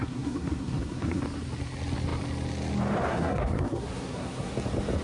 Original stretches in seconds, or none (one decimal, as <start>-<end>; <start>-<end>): 1.2-3.1; 4.5-5.0